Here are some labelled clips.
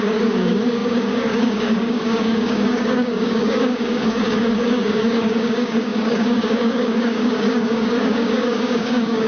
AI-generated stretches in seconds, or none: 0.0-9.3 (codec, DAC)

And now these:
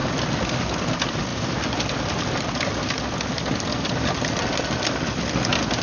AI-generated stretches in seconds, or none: 1.3-4.7 (vocoder, BigVGAN v2)

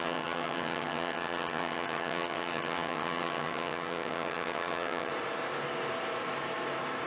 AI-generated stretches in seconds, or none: 0.0-5.1 (vocoder, HiFi-GAN)

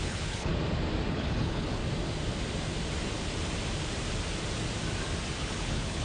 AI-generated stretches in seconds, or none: 0.0-0.5 (codec, HILCodec); 1.1-1.8; 5.4-6.0

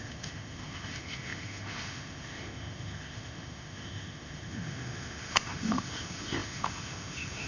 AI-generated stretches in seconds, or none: 0.0-7.5 (autoencoder, DAC-VAE)

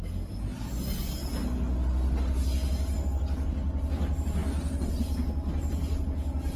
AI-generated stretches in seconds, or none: none